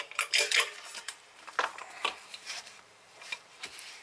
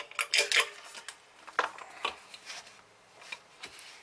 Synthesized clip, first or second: first